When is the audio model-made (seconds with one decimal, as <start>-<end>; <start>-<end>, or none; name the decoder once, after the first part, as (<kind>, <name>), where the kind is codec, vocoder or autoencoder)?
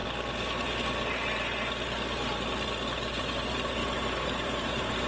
3.1-5.1 (vocoder, BigVGAN v2)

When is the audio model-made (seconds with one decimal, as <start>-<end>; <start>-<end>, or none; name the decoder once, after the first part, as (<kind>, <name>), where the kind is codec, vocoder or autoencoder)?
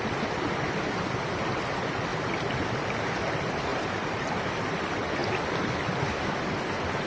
3.7-4.6 (vocoder, BigVGAN v2)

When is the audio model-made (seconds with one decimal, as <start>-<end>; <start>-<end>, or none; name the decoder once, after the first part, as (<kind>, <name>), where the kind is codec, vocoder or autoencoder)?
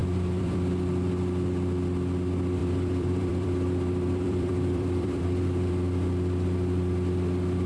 0.0-1.1 (vocoder, BigVGAN v2); 2.6-5.7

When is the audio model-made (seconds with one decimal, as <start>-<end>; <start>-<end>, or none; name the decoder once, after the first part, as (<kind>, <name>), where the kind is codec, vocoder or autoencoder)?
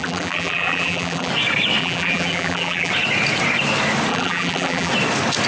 0.0-1.3 (vocoder, BigVGAN v2); 1.8-2.9; 4.1-4.9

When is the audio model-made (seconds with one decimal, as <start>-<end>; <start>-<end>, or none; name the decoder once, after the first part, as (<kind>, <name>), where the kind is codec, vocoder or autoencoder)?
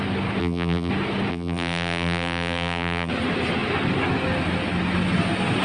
0.4-0.9 (vocoder, BigVGAN v2); 1.3-3.1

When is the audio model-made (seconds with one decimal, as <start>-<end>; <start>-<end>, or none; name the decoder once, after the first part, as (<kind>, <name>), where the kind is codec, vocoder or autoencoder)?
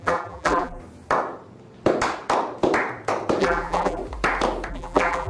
0.0-0.8 (vocoder, BigVGAN v2); 3.4-4.0; 4.7-5.3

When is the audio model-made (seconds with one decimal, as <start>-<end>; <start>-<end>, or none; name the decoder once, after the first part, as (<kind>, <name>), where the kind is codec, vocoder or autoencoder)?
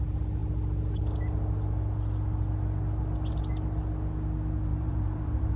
4.7-5.6 (vocoder, BigVGAN v2)